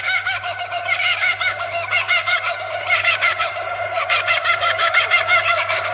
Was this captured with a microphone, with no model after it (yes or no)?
no